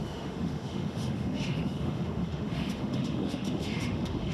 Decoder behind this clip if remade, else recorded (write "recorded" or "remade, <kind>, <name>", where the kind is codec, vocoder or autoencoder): remade, autoencoder, DAC-VAE